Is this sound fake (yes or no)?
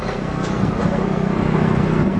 yes